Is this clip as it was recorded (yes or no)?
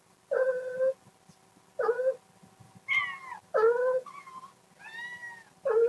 yes